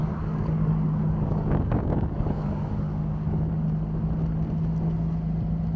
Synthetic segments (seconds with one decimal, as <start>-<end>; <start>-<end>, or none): 0.0-3.5